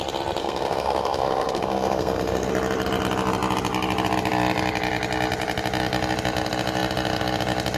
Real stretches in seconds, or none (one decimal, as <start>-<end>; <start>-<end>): 0.0-0.4; 2.5-7.8